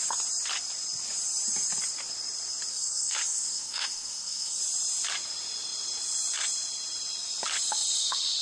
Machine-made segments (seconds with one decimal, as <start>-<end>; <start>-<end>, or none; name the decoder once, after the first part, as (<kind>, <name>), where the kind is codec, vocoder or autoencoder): 2.7-4.6 (codec, SNAC)